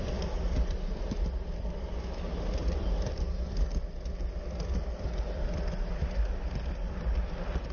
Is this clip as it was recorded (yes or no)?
no